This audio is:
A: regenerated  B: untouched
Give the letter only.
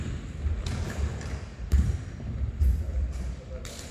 A